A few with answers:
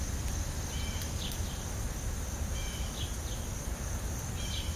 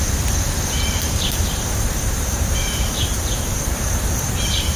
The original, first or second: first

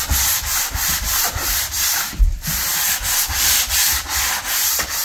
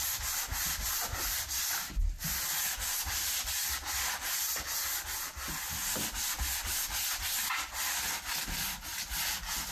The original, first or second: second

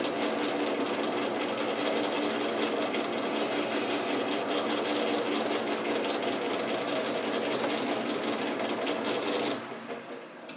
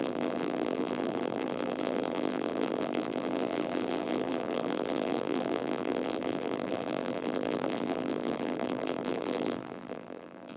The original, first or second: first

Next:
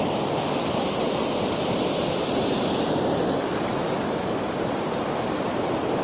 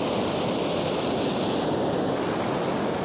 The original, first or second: second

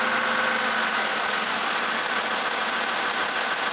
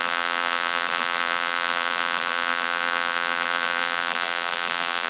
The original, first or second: first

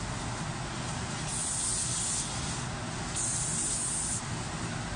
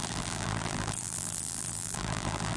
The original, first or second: first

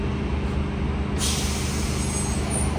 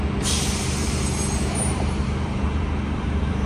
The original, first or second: first